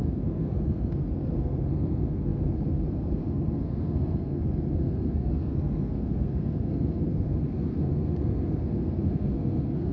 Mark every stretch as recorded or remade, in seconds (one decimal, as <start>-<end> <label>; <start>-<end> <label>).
0.0-9.9 remade